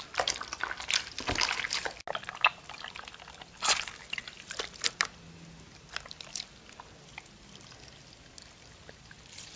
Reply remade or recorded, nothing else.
recorded